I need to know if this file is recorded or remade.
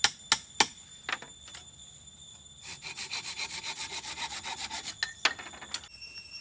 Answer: recorded